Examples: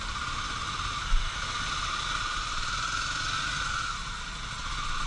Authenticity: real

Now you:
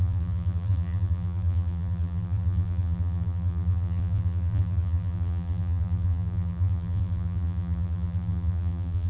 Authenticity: fake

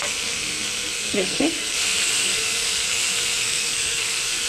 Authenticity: fake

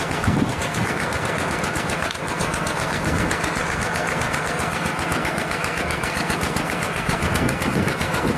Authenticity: fake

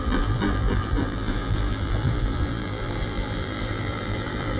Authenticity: fake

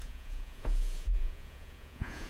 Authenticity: fake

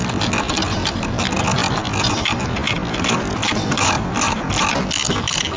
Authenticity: real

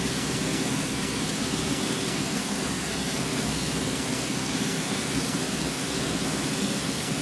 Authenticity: fake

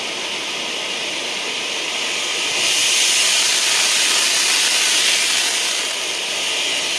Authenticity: real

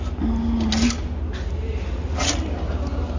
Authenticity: real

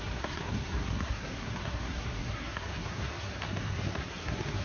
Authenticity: fake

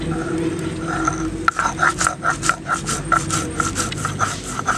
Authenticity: real